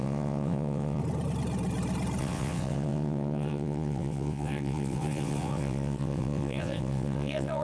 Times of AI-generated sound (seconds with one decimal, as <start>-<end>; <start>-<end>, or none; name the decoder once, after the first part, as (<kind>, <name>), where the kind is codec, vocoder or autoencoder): 0.0-1.0 (vocoder, WaveNeXt); 2.2-7.6